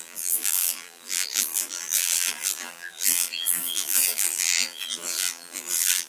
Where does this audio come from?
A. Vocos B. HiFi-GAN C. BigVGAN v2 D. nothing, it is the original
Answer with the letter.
C